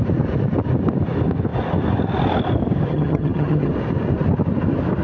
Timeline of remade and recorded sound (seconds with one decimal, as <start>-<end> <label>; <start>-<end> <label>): 0.0-2.9 recorded; 2.9-3.7 remade; 3.7-5.0 recorded